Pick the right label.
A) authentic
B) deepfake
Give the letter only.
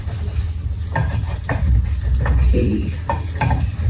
A